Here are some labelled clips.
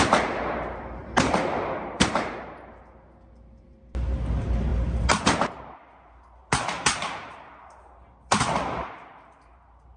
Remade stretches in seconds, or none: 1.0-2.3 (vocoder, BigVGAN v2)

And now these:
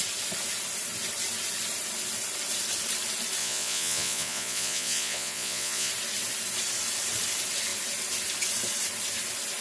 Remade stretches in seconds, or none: 3.4-5.9 (vocoder, Vocos)

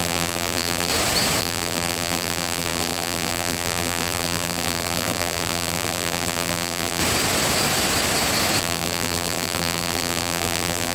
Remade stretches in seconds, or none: 0.0-0.9 (vocoder, BigVGAN v2); 1.4-7.0; 8.6-10.9

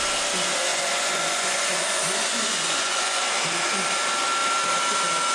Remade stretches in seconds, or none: 0.7-3.3 (vocoder, Vocos)

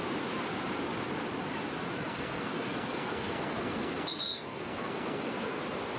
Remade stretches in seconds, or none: 2.0-5.6 (codec, SNAC)

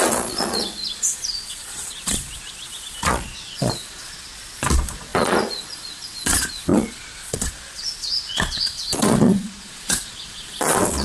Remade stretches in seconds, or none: 0.0-11.0 (vocoder, Vocos)